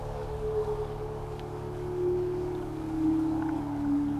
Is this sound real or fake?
fake